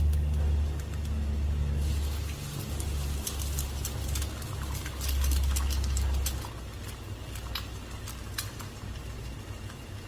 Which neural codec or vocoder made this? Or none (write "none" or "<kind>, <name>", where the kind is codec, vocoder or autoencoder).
none